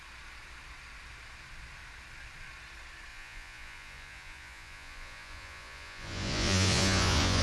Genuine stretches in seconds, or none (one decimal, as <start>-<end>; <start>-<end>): 0.0-3.1